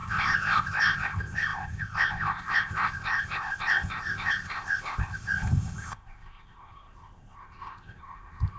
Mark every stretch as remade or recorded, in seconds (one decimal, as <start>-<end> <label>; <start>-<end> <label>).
0.0-8.6 remade